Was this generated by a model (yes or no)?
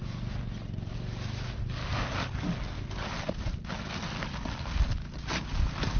no